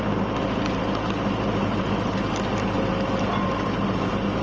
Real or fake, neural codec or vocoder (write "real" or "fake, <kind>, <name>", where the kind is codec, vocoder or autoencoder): real